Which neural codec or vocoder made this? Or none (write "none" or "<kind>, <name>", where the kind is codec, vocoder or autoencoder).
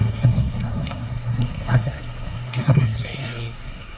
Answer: codec, SNAC